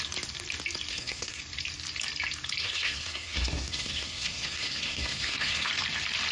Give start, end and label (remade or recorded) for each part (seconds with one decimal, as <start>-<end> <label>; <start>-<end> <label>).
0.0-0.9 recorded; 0.9-1.4 remade; 1.4-2.6 recorded; 2.6-5.7 remade; 5.7-6.3 recorded